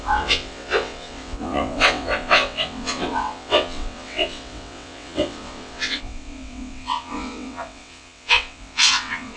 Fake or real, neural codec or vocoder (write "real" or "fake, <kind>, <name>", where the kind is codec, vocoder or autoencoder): fake, vocoder, WaveNeXt